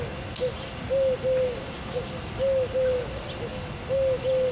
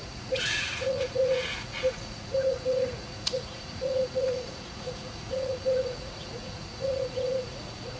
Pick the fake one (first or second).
second